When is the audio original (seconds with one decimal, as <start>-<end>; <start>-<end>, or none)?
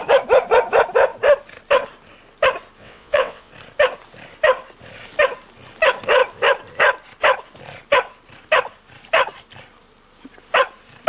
0.0-2.8; 3.5-11.1